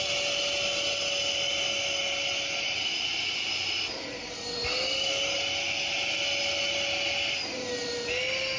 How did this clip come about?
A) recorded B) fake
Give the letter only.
A